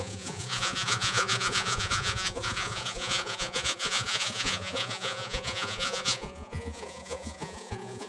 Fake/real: fake